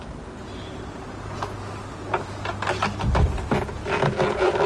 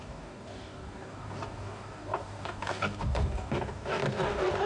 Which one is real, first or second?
first